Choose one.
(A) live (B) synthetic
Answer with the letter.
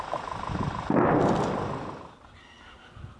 A